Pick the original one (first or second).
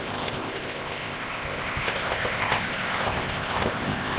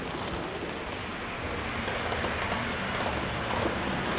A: second